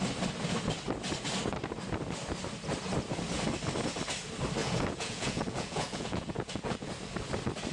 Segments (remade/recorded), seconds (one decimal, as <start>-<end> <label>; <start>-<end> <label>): 0.0-4.6 recorded; 4.6-6.9 remade; 6.9-7.7 recorded